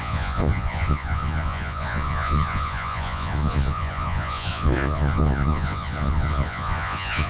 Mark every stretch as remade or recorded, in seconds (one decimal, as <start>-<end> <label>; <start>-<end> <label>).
0.0-7.3 remade